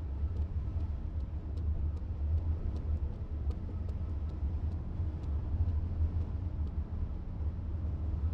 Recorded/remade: recorded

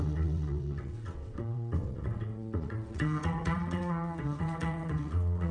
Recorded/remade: remade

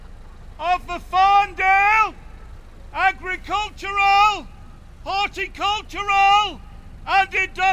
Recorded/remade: recorded